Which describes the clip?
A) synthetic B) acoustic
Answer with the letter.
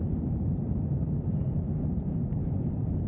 A